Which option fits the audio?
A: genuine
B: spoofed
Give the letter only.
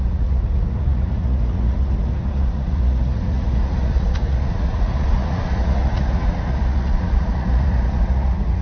B